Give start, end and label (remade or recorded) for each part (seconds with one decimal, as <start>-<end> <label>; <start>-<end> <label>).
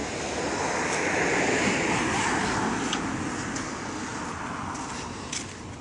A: 0.0-2.4 recorded; 2.4-3.0 remade; 3.0-5.8 recorded